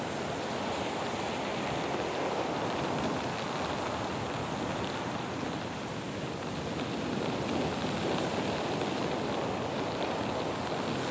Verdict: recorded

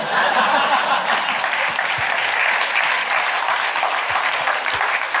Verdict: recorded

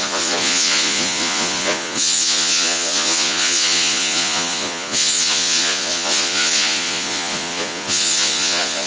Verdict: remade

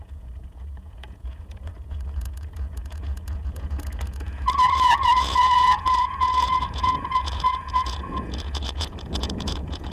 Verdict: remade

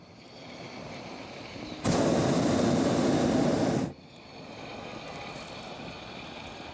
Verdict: recorded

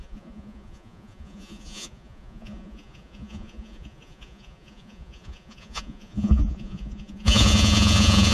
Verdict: remade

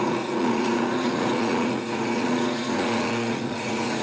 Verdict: remade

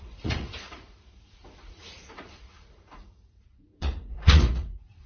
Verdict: remade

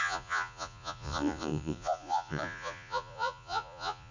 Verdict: remade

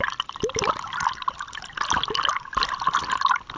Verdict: recorded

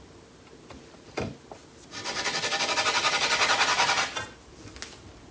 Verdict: recorded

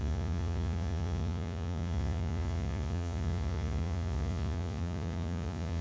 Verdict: remade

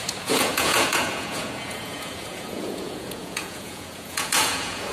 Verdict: remade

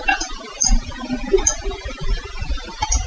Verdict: remade